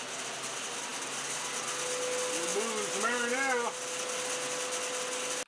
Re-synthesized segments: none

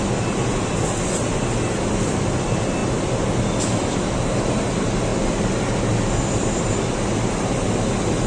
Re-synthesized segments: none

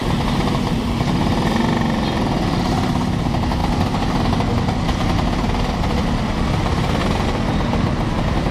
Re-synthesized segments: none

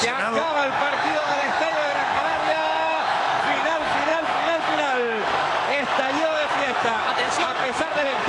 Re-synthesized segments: 0.0-8.3 (codec, DAC)

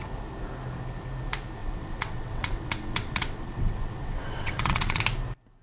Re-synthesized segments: 1.6-5.0 (vocoder, WaveNeXt)

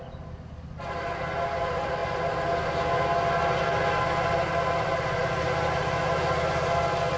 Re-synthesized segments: none